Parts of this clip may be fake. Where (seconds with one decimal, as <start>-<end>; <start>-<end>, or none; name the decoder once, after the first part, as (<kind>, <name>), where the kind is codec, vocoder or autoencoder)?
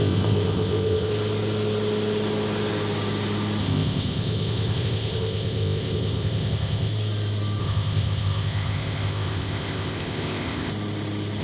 0.0-1.1 (codec, ZipCodec); 3.6-6.9; 7.6-10.7